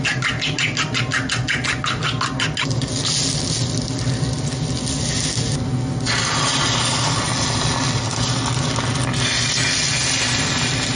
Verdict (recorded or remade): recorded